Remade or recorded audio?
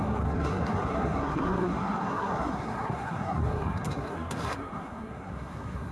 remade